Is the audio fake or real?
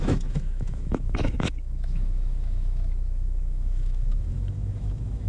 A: fake